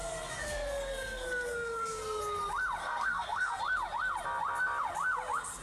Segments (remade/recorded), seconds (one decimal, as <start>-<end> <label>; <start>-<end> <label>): 0.0-2.2 remade; 2.2-2.8 recorded; 2.8-3.6 remade; 3.6-5.6 recorded